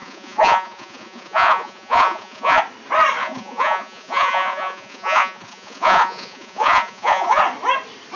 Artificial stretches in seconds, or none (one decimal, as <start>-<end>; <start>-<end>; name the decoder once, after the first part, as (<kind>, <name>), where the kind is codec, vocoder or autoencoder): 0.0-2.6 (vocoder, Vocos); 3.2-7.4